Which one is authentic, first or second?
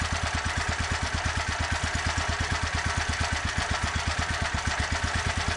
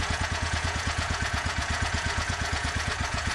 first